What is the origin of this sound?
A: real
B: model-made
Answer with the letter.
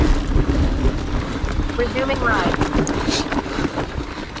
A